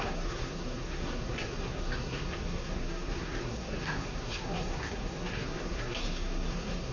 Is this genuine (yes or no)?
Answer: no